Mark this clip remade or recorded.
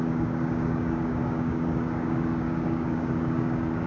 remade